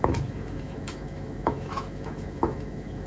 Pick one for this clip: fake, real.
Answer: fake